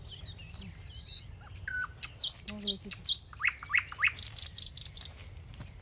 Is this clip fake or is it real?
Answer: real